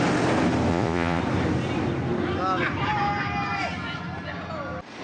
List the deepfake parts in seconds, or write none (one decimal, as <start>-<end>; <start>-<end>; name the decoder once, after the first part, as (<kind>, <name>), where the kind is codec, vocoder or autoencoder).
0.7-1.2 (vocoder, Vocos)